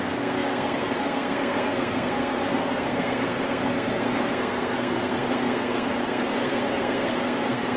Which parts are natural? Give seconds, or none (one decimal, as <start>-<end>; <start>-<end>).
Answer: none